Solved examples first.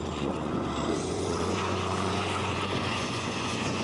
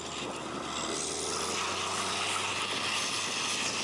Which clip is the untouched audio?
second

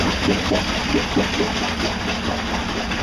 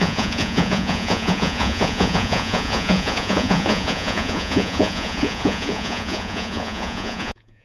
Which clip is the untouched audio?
first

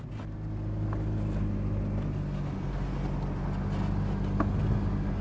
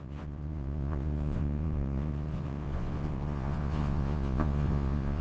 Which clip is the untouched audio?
first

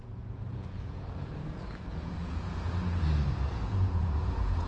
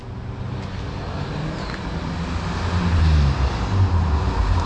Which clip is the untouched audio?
second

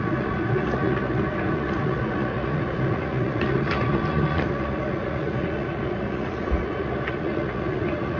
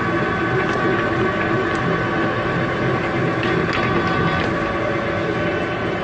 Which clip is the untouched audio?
second